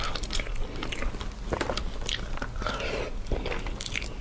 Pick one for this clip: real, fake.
real